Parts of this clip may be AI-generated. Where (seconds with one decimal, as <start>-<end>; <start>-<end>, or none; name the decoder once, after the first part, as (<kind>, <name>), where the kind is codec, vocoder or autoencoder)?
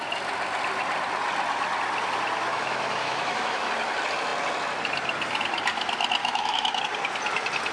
2.5-3.7 (autoencoder, DAC-VAE); 6.2-6.8